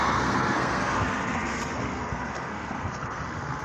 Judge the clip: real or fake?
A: fake